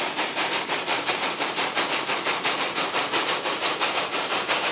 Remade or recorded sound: remade